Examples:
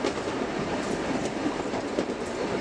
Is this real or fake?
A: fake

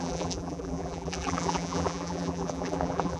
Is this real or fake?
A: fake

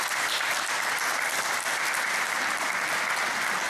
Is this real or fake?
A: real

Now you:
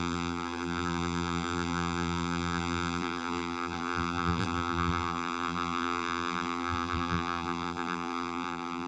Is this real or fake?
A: fake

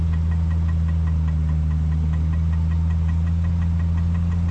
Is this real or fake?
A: real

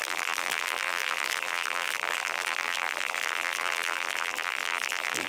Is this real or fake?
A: fake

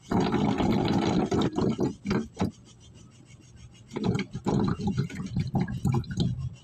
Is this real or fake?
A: real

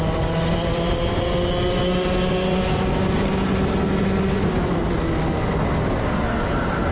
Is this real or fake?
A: real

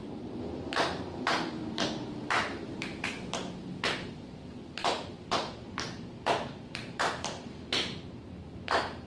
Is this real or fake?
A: fake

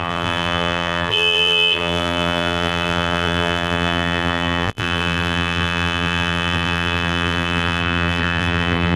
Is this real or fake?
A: fake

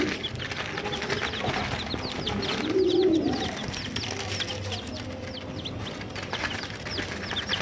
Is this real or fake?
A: real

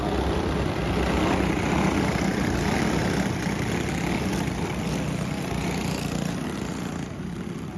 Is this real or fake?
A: real